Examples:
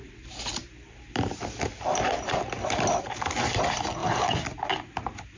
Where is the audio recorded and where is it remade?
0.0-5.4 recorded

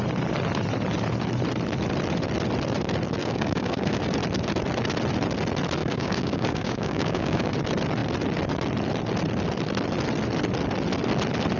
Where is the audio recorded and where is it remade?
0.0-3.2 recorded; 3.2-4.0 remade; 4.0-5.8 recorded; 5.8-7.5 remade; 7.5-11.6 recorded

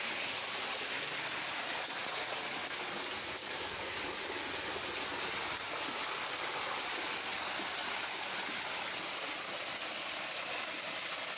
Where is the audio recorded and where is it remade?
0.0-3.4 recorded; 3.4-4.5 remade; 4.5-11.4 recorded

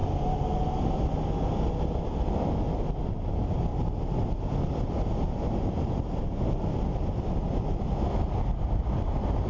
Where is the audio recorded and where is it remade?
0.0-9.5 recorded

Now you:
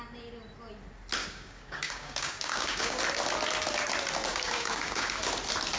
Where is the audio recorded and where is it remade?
0.0-1.2 recorded; 1.2-3.0 remade; 3.0-4.3 recorded; 4.3-5.2 remade; 5.2-5.8 recorded

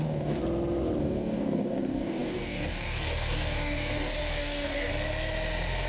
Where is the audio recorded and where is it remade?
0.0-0.4 remade; 0.4-1.0 recorded; 1.0-4.9 remade; 4.9-5.9 recorded